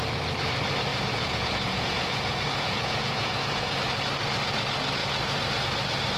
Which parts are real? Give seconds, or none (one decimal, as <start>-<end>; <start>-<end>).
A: 0.0-0.9; 3.8-6.2